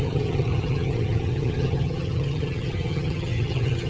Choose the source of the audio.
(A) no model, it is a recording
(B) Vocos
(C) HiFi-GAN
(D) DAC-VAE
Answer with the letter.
C